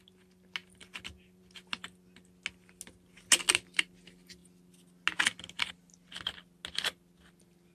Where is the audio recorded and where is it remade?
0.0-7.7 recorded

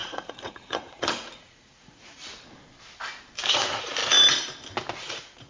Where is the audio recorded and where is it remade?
0.0-2.3 remade; 2.3-3.5 recorded; 3.5-4.0 remade; 4.0-5.0 recorded; 5.0-5.5 remade